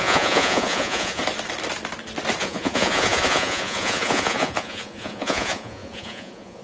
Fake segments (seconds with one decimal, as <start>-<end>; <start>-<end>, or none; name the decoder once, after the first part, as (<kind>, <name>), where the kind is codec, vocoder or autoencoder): 0.0-1.2 (vocoder, Vocos); 2.4-6.6